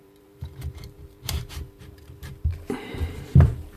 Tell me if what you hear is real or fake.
fake